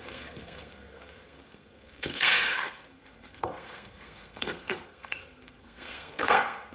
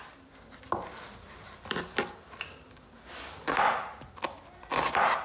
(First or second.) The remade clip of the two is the first